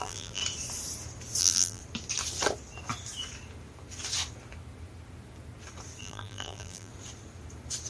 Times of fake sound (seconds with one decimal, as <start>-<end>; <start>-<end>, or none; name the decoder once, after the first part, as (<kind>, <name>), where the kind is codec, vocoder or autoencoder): 0.0-0.4 (vocoder, BigVGAN v2); 1.4-1.8; 6.0-6.9